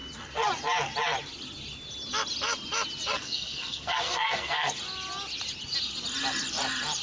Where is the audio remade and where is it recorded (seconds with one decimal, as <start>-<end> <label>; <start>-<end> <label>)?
0.0-3.2 recorded; 3.2-4.7 remade; 4.7-7.0 recorded